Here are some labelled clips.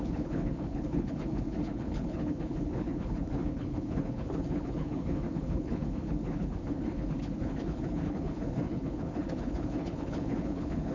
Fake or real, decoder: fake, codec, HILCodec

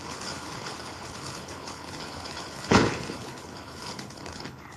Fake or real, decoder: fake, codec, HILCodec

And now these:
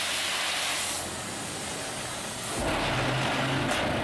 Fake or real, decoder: real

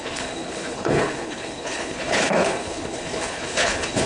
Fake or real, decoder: fake, codec, HILCodec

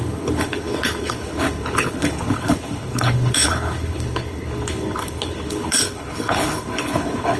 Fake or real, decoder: fake, codec, HILCodec